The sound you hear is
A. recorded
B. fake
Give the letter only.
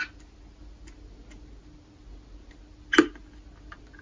A